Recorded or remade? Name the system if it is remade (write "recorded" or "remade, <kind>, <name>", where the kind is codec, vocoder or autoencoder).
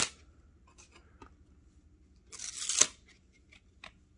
recorded